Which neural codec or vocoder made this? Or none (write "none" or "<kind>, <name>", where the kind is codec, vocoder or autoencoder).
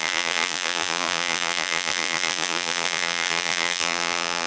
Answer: vocoder, BigVGAN v2